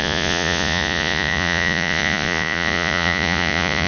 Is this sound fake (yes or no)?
yes